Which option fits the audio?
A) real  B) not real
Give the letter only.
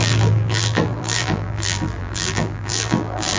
B